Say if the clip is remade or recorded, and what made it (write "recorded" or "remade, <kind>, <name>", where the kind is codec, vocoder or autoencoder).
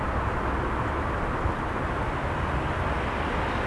recorded